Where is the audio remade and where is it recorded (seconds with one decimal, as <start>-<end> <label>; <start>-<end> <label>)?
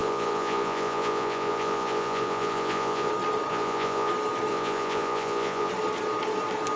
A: 0.0-3.1 remade; 3.1-3.5 recorded; 3.5-4.1 remade; 4.1-4.5 recorded; 4.5-5.7 remade; 5.7-6.8 recorded